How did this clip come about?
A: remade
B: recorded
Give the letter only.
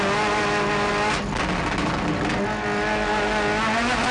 B